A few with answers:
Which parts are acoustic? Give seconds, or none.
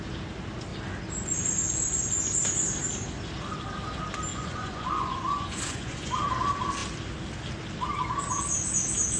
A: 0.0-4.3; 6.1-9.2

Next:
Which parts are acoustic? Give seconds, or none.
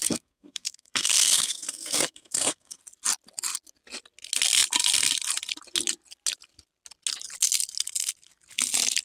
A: 2.8-9.0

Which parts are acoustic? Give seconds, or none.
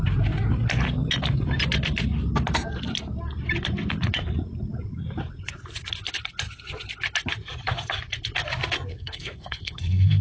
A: 0.0-8.9